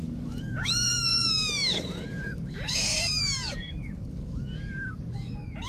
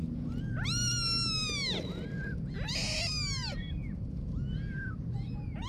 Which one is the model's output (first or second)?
first